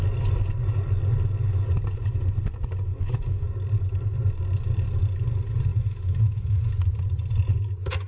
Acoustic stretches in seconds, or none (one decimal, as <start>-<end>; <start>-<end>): 0.0-2.9; 3.5-5.7; 6.6-8.1